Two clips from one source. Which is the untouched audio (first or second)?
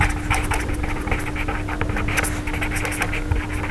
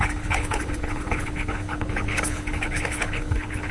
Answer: first